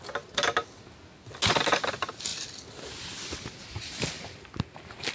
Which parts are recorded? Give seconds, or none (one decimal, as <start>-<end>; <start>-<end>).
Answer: 0.0-5.1